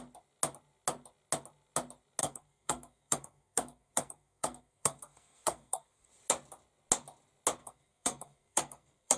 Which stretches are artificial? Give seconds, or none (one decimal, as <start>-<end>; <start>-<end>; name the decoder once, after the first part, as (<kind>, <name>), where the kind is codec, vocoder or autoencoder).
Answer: 2.2-6.1 (codec, SNAC); 7.6-9.2